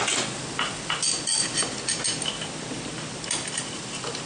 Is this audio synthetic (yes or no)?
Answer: no